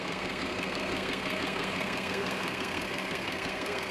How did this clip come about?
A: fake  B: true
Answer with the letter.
A